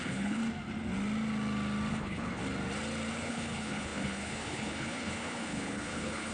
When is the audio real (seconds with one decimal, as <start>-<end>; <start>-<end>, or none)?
0.4-1.9; 2.4-3.1